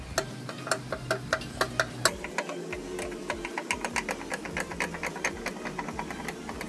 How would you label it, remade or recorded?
recorded